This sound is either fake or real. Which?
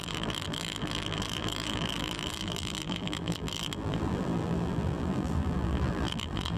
fake